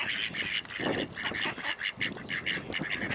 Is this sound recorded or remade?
recorded